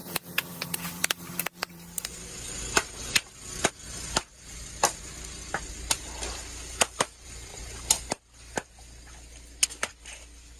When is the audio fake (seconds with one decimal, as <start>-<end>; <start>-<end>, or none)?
0.0-3.7; 7.5-8.2